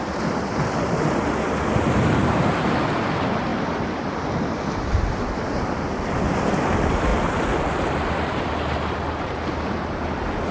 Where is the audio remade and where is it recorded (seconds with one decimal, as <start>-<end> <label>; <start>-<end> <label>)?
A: 0.0-10.5 recorded